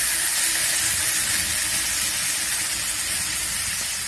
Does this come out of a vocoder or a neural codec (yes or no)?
no